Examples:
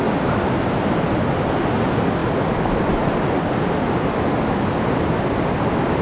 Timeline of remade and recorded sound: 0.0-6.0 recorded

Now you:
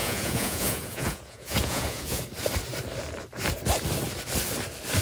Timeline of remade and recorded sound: 0.0-2.2 remade; 2.2-5.0 recorded